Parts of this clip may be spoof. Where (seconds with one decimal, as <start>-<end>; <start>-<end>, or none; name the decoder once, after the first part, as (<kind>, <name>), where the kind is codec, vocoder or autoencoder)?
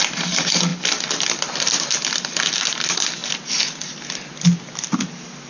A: none